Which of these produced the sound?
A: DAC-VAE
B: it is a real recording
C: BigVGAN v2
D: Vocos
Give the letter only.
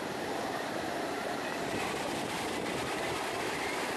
B